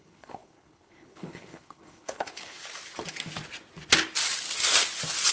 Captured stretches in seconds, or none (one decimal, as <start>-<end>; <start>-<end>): 2.6-5.3